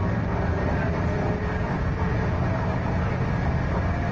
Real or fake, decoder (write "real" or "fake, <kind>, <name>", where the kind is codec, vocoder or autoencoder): real